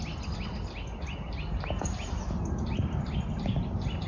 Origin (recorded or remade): recorded